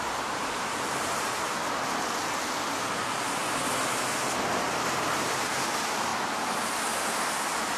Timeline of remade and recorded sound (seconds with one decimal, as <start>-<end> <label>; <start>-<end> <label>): 0.0-1.6 remade; 1.6-2.8 recorded; 2.8-3.4 remade; 3.4-4.6 recorded; 4.6-6.1 remade; 6.1-7.8 recorded